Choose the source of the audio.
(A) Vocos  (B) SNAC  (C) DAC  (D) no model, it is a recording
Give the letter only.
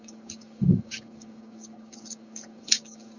C